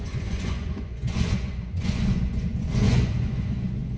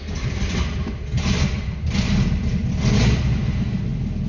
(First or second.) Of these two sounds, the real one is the second